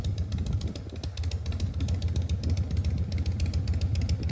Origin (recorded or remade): recorded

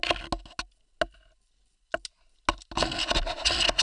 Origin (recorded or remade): recorded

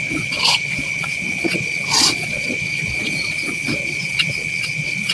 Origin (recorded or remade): remade